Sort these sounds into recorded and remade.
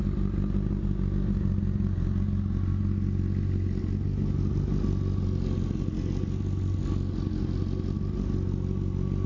recorded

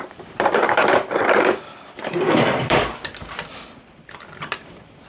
remade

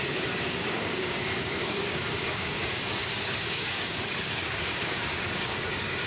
remade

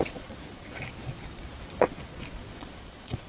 remade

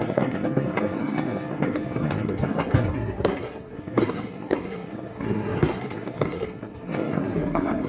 remade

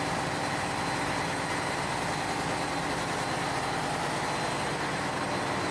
recorded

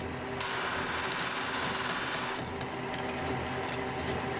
recorded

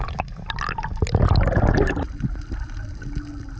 recorded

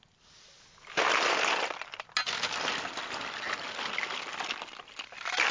recorded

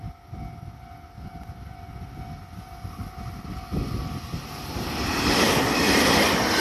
recorded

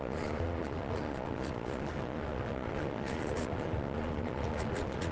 remade